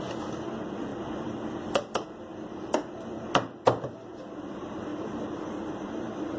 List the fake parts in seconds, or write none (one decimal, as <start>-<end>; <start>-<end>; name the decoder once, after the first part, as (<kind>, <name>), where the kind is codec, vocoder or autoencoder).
0.9-1.7 (vocoder, BigVGAN v2); 4.9-5.7